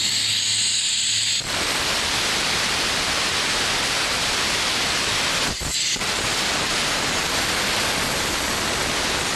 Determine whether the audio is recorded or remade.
recorded